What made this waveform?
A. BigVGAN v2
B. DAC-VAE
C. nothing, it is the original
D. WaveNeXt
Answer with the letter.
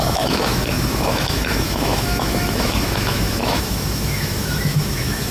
B